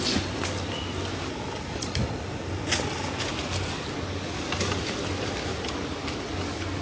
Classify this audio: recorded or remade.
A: recorded